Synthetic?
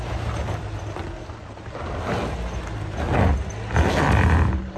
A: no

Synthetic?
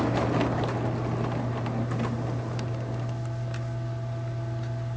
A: no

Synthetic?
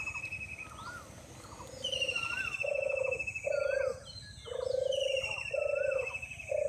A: no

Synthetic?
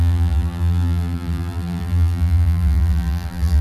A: yes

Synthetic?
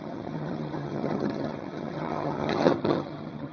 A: yes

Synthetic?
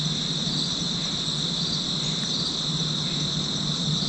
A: no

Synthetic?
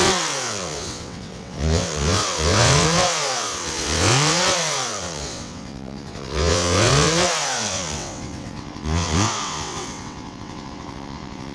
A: yes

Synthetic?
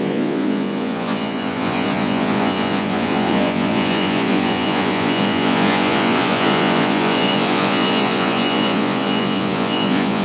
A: yes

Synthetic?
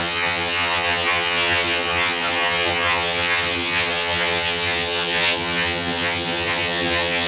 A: yes